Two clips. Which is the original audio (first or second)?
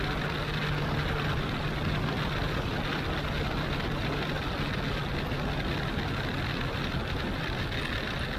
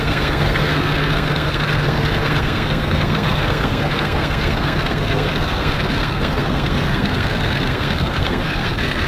first